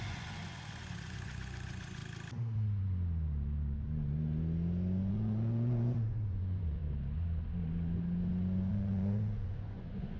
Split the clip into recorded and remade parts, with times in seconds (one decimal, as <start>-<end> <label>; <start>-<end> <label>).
0.0-2.0 remade; 2.0-5.1 recorded; 5.1-6.8 remade; 6.8-8.7 recorded; 8.7-10.2 remade